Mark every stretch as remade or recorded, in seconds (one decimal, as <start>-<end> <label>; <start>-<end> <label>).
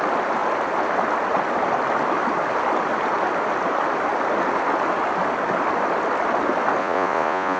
0.0-6.8 recorded; 6.8-7.6 remade